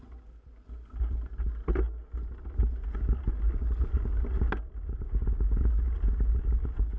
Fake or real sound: real